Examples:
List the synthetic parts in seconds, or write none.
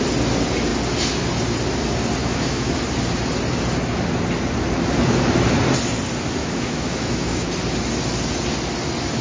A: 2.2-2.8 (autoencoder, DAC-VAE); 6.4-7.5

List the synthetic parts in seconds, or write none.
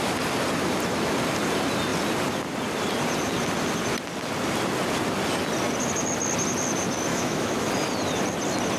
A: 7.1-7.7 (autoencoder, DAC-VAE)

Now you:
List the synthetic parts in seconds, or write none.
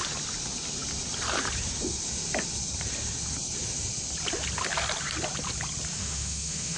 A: 6.0-6.8 (autoencoder, DAC-VAE)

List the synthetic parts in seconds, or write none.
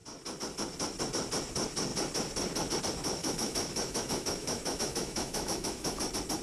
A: 3.2-6.0 (autoencoder, DAC-VAE)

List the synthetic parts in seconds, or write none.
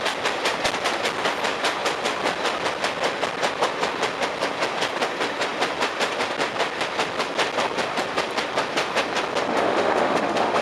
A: 9.5-10.6 (autoencoder, DAC-VAE)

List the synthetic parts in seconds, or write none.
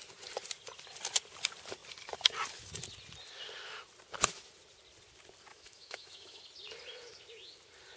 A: 5.5-6.4 (autoencoder, DAC-VAE)